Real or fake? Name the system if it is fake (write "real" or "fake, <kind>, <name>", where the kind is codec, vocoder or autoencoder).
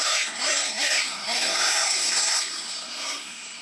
fake, codec, SNAC